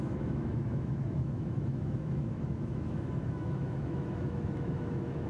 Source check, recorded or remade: remade